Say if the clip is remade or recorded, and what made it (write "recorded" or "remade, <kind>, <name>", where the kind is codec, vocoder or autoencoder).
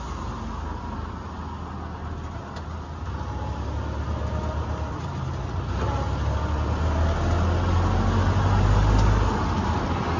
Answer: recorded